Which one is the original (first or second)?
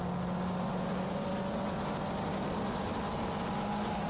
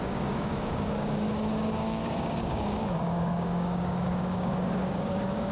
first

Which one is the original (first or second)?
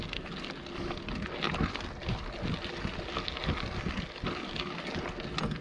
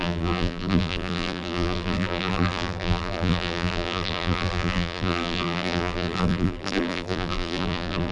first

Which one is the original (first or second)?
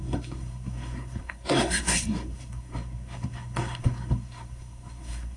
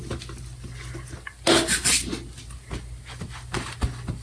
second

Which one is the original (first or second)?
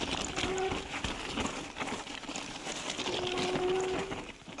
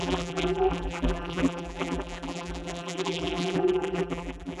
first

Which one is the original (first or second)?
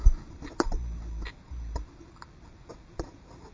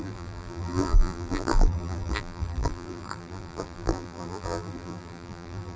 first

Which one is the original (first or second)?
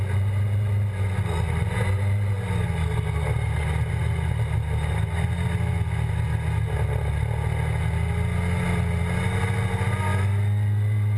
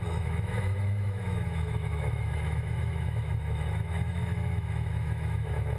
first